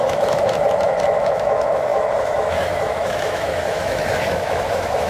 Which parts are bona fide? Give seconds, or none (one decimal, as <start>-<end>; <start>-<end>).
none